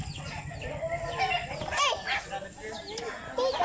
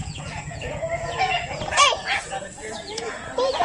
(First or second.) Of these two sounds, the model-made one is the second